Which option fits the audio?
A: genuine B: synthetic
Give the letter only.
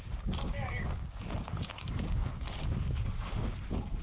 B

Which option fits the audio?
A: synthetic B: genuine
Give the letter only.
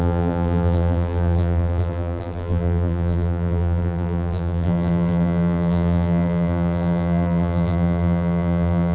A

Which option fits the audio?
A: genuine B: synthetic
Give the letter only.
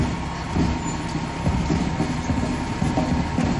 A